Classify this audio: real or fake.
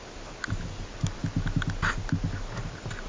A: real